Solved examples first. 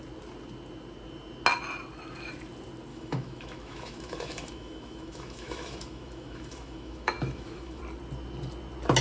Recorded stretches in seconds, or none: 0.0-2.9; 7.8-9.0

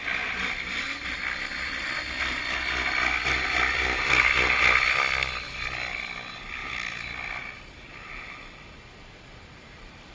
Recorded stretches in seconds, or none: 0.0-10.1

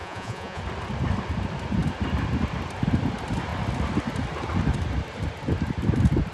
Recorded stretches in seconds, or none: 0.6-6.3

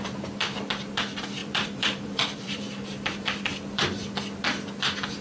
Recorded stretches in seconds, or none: 0.0-1.4; 2.7-5.2